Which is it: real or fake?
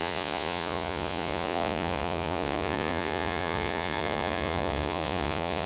fake